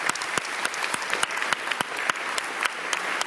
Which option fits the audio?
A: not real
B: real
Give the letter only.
A